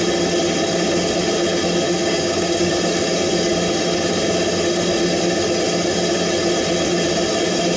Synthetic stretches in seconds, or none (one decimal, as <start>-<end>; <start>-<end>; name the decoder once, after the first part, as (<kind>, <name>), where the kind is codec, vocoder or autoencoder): 2.0-2.7 (codec, DAC)